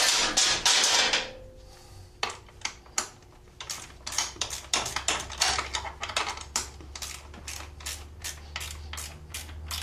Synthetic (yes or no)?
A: no